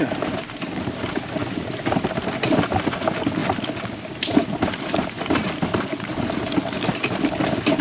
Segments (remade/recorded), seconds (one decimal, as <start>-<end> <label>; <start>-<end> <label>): 0.0-7.8 recorded